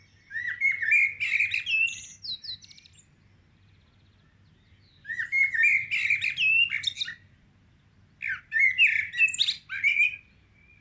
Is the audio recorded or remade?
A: recorded